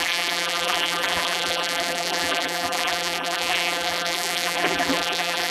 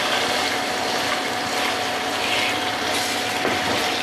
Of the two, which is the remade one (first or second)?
first